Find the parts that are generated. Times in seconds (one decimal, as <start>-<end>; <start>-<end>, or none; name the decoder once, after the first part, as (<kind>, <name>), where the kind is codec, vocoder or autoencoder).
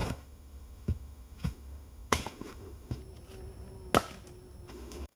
0.0-3.0 (autoencoder, DAC-VAE); 4.7-5.2